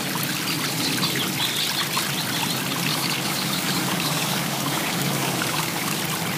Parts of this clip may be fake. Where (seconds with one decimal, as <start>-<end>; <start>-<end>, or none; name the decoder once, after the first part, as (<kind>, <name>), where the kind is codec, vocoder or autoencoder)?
2.9-6.0 (codec, DAC)